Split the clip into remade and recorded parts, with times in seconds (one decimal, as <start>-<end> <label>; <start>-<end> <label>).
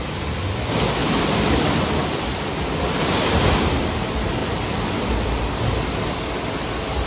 0.0-1.0 recorded; 1.0-3.0 remade; 3.0-4.4 recorded; 4.4-5.4 remade; 5.4-7.1 recorded